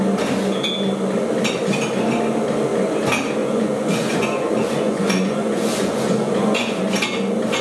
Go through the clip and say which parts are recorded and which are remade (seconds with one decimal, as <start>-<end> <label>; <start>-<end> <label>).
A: 0.0-3.4 recorded; 3.4-6.8 remade; 6.8-7.6 recorded